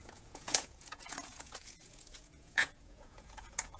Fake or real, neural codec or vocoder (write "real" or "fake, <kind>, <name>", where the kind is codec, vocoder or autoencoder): fake, vocoder, Vocos